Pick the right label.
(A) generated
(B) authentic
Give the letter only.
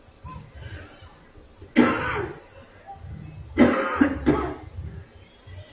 B